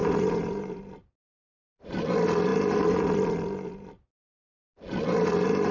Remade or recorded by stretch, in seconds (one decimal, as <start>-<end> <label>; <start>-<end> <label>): 0.0-1.9 remade; 1.9-5.7 recorded